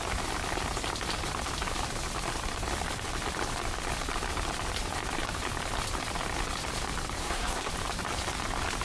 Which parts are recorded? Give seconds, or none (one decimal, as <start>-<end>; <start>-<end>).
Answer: 0.0-7.2; 7.7-8.8